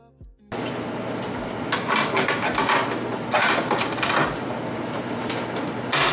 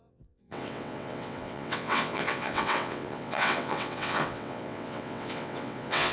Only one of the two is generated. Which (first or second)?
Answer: second